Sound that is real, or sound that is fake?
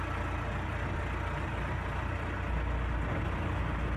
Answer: real